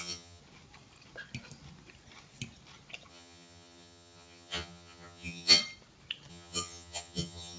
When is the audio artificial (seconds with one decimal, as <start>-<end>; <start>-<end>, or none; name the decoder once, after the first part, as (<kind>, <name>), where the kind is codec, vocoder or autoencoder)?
0.0-0.4 (vocoder, HiFi-GAN); 3.1-5.6; 6.3-7.6